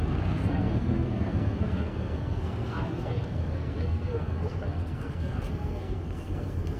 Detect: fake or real fake